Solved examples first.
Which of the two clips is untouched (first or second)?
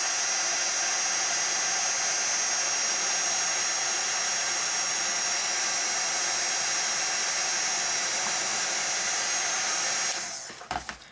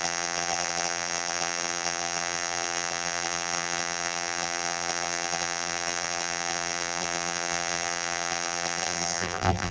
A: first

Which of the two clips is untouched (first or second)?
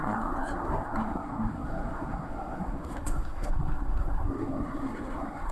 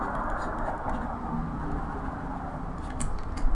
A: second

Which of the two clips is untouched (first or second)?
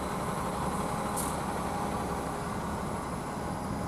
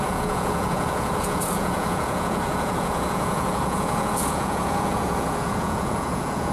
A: first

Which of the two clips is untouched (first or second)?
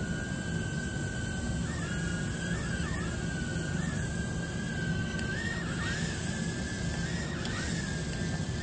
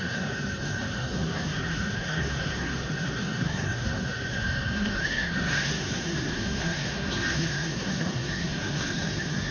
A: first